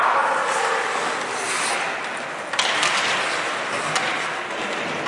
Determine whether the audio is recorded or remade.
recorded